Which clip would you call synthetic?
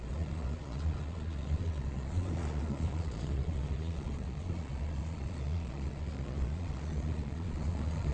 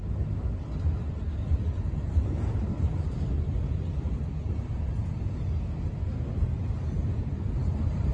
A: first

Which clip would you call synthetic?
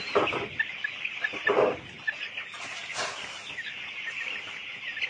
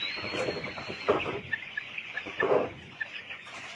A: second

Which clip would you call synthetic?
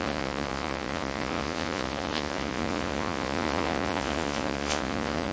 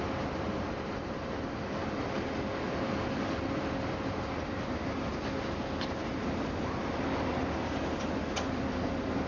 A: first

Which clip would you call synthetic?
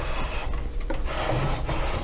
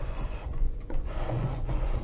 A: second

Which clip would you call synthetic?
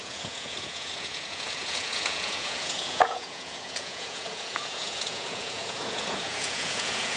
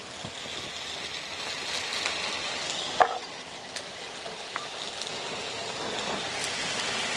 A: first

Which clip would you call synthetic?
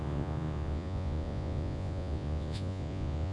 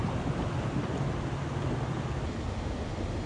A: first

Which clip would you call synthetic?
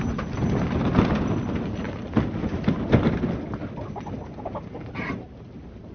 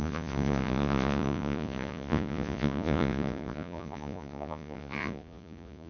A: second